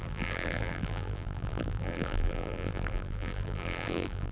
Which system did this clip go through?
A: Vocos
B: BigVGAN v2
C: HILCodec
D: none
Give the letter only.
B